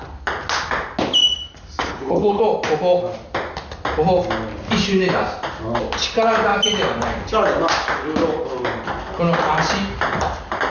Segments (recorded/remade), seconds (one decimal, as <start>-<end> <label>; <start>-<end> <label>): 0.0-1.8 recorded; 1.8-2.4 remade; 2.4-10.7 recorded